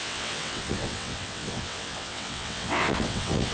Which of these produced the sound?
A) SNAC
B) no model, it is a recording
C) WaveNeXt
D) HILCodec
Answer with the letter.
C